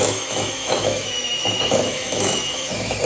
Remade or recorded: remade